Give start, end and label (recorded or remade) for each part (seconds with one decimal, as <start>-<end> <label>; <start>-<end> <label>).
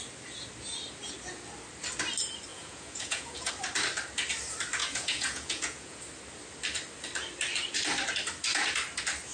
0.0-2.5 recorded; 2.5-3.5 remade; 3.5-4.8 recorded; 4.8-6.0 remade; 6.0-9.3 recorded